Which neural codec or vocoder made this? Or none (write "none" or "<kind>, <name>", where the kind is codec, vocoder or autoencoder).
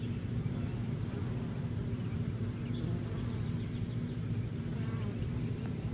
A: vocoder, BigVGAN v2